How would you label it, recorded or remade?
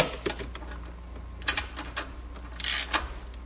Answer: recorded